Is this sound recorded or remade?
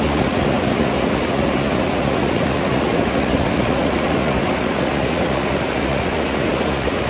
remade